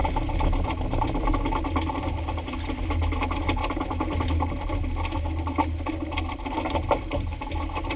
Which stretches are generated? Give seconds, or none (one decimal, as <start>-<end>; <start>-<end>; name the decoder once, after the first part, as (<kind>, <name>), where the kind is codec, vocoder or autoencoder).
none